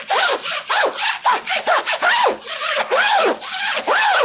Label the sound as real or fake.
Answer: real